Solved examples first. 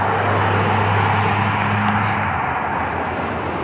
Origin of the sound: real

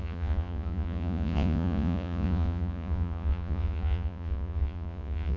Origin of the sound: fake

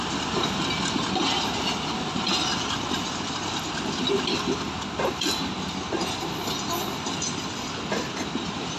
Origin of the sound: real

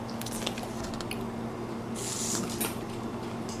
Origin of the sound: real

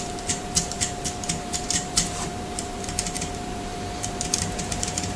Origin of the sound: fake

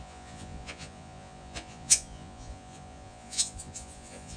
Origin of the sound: fake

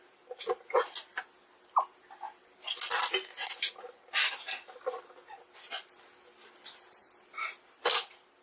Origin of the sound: real